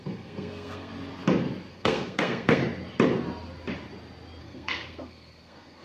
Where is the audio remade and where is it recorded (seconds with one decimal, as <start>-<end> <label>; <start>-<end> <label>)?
0.0-0.9 remade; 0.9-1.7 recorded; 1.7-2.6 remade; 2.6-4.4 recorded; 4.4-5.8 remade